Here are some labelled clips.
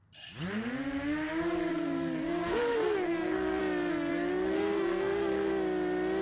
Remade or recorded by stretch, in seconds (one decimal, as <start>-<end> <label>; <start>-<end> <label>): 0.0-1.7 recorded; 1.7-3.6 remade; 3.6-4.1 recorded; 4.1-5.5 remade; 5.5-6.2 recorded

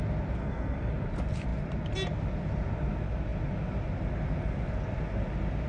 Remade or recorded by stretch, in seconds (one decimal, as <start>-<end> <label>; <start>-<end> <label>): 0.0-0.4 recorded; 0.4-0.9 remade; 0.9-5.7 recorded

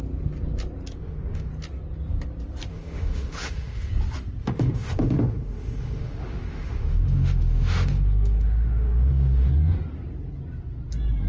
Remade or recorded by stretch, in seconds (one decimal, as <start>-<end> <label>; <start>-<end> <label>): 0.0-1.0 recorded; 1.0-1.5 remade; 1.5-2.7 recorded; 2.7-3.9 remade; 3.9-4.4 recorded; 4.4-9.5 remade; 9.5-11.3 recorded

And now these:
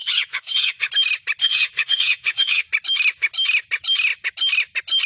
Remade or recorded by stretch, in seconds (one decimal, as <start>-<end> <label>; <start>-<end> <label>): 0.0-0.9 remade; 0.9-1.4 recorded; 1.4-2.6 remade; 2.6-5.1 recorded